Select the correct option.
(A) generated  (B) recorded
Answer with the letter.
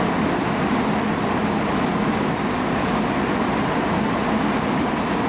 B